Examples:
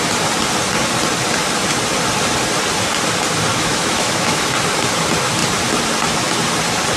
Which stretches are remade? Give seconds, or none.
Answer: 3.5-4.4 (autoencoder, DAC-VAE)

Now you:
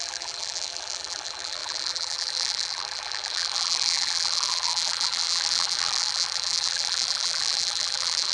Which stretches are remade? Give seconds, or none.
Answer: 0.0-8.3 (vocoder, BigVGAN v2)

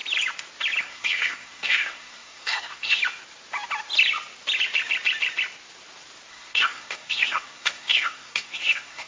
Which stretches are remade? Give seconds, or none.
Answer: 0.8-3.0 (codec, SNAC); 6.3-9.1

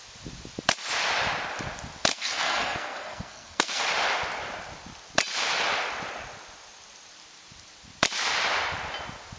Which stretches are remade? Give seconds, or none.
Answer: 2.1-3.8 (codec, SNAC)

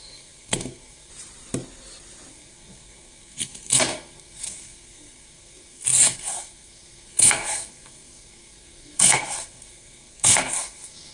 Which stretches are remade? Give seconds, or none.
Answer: 0.0-1.1 (codec, SNAC); 2.3-11.1

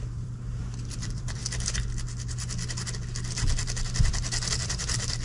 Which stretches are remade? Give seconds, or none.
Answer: 0.0-1.4 (vocoder, BigVGAN v2); 4.5-5.2

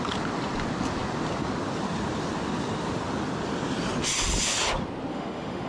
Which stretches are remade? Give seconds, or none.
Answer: 5.1-5.7 (autoencoder, DAC-VAE)

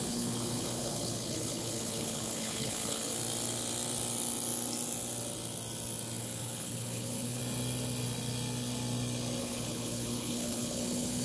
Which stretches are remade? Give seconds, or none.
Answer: 0.0-3.1 (codec, HILCodec); 6.2-7.4; 9.4-11.2